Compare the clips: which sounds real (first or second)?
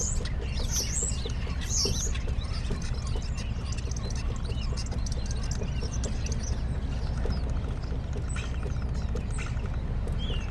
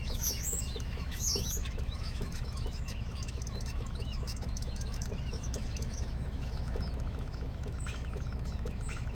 first